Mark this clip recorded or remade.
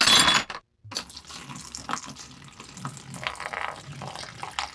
recorded